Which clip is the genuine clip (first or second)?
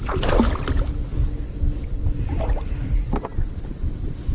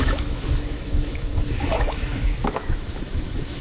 first